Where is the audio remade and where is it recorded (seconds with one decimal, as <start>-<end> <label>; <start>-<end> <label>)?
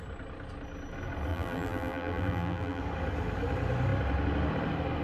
0.0-1.3 recorded; 1.3-2.8 remade; 2.8-5.0 recorded